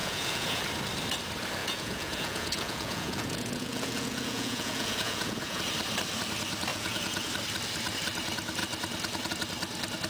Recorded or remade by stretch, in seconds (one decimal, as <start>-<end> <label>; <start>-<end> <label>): 0.0-0.6 remade; 0.6-1.6 recorded; 1.6-5.6 remade; 5.6-6.7 recorded; 6.7-7.3 remade; 7.3-10.1 recorded